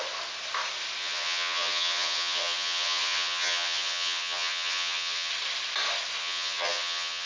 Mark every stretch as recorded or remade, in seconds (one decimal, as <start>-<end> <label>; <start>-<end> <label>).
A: 0.0-1.0 recorded; 1.0-5.3 remade; 5.3-6.2 recorded; 6.2-7.3 remade